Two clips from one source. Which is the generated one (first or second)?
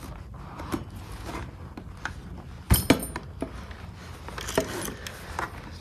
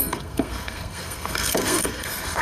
second